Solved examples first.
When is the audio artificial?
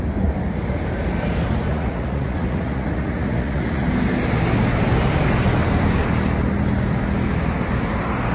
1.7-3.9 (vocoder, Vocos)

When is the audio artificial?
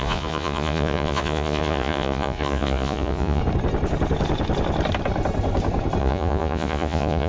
0.0-3.4 (vocoder, Vocos); 6.0-7.3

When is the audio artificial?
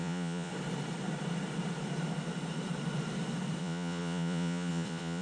0.0-0.5 (vocoder, Vocos); 3.6-5.2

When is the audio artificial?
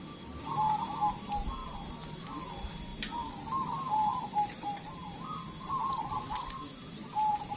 none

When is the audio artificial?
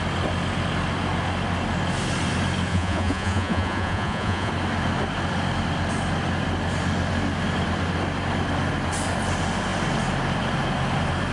2.7-4.5 (vocoder, Vocos)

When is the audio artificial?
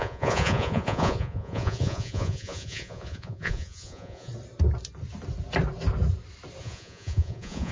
0.0-4.3 (vocoder, Vocos); 6.6-7.7